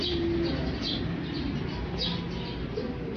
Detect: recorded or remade recorded